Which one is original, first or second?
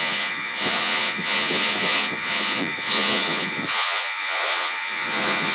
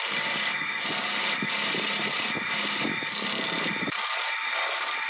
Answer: second